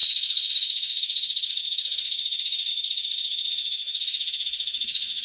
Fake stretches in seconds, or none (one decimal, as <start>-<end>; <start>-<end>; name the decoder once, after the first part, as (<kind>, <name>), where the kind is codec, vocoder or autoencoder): 0.0-5.2 (autoencoder, DAC-VAE)